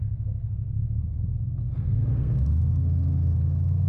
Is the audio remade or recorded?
remade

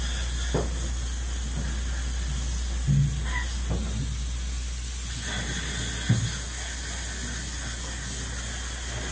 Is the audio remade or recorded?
recorded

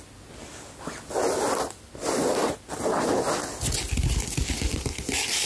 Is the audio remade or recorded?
recorded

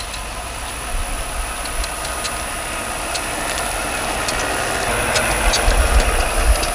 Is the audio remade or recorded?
recorded